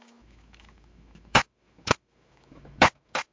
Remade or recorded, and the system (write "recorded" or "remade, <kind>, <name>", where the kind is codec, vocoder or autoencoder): remade, autoencoder, DAC-VAE